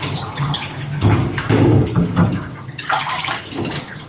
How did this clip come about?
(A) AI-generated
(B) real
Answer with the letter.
A